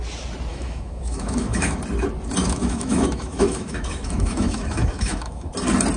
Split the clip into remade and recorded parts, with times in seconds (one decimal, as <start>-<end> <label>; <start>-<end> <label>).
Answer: 0.0-0.5 recorded; 0.5-1.8 remade; 1.8-2.4 recorded; 2.4-5.5 remade; 5.5-6.0 recorded